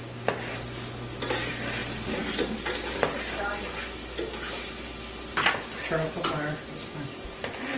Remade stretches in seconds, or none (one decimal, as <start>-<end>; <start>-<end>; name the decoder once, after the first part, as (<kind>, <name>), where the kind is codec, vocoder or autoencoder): none

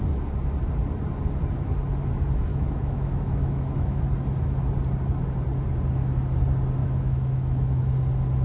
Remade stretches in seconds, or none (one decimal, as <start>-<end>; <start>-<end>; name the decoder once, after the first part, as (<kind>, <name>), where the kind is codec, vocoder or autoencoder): 2.5-4.0 (autoencoder, DAC-VAE); 6.8-7.8

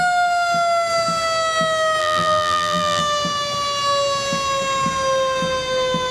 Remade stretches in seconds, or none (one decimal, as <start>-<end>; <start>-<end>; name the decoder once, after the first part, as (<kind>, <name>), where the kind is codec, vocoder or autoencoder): 2.0-3.0 (vocoder, BigVGAN v2)

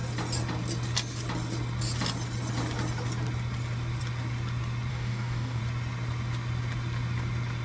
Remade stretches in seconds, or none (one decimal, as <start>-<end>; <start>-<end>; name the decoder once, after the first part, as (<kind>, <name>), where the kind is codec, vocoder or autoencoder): 4.9-5.6 (codec, DAC)

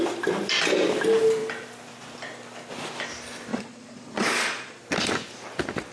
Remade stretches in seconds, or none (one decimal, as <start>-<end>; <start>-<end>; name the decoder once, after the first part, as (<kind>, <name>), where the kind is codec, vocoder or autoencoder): 3.5-4.8 (vocoder, Vocos)

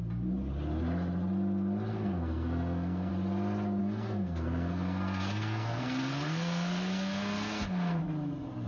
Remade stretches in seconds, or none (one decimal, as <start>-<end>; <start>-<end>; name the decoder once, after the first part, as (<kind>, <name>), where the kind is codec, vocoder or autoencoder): 1.9-3.1 (codec, SNAC); 3.8-8.0

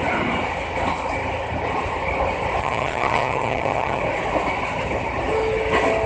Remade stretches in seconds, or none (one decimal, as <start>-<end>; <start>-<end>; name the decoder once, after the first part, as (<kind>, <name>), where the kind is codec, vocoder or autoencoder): 2.6-4.0 (vocoder, HiFi-GAN)

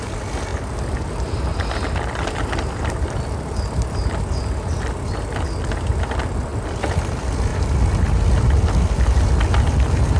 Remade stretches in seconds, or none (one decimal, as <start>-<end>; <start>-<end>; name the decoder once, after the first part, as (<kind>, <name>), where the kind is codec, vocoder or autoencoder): none